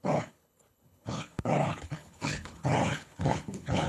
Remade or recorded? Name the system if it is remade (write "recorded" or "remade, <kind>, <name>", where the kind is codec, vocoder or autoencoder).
remade, codec, HILCodec